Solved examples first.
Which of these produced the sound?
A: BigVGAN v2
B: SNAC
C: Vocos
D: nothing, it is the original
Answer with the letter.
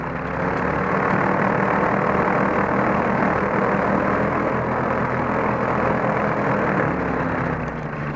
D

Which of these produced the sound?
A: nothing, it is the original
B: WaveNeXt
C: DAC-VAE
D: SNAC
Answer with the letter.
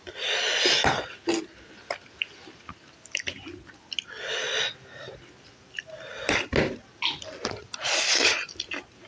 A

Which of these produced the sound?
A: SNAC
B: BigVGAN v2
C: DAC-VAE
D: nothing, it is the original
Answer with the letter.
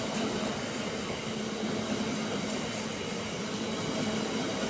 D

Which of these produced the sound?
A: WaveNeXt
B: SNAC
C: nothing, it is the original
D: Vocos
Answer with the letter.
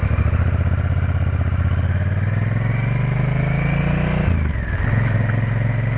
C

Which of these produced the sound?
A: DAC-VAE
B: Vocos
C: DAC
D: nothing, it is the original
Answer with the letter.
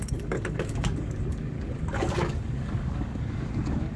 C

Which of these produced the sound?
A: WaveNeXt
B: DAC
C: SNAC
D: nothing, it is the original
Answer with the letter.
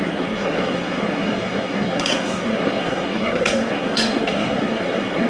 C